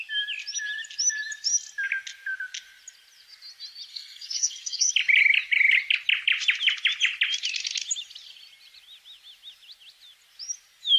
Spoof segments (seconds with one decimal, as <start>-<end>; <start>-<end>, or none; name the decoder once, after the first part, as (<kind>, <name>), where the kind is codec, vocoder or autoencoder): 3.9-4.9 (codec, SNAC)